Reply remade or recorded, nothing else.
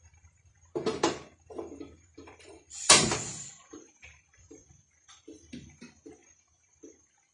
remade